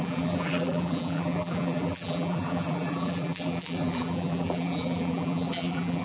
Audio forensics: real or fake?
fake